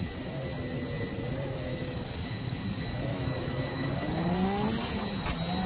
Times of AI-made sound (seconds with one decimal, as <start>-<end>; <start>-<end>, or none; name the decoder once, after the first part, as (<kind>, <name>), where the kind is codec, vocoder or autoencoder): 1.7-4.3 (codec, DAC)